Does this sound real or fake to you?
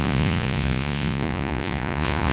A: fake